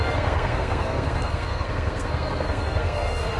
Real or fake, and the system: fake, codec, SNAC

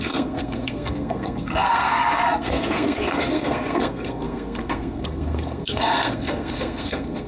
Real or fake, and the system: fake, codec, SNAC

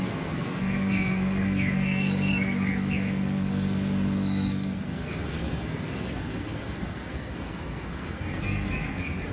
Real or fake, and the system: fake, codec, SNAC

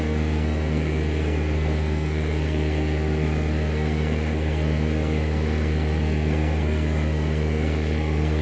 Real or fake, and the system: fake, codec, SNAC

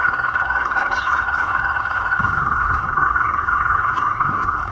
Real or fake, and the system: fake, codec, SNAC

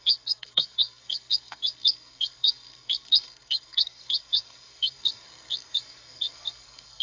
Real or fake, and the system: fake, codec, SNAC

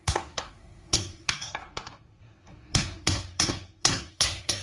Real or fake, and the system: fake, codec, SNAC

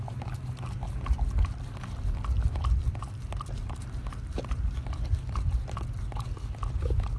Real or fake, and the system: real